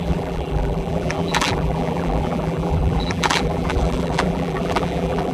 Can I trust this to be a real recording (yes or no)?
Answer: no